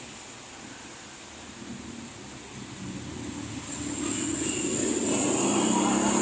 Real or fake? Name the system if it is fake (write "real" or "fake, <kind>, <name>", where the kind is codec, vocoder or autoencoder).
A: real